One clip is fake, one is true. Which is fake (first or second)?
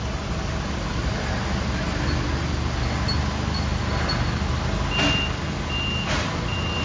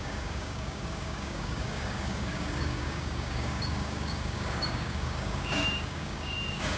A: second